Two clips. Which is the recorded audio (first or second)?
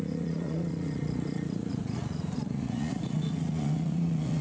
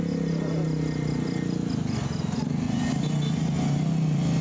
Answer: second